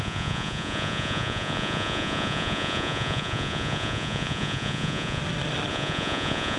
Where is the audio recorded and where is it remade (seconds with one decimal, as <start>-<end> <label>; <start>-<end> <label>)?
0.0-5.2 remade; 5.2-5.7 recorded; 5.7-6.6 remade